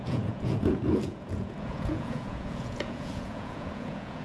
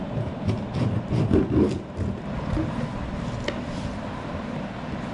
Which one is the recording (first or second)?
second